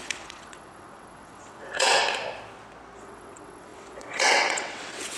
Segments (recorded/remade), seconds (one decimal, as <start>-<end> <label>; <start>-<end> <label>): 0.0-2.0 remade; 2.0-3.0 recorded; 3.0-5.2 remade